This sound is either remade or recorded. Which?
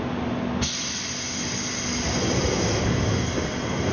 recorded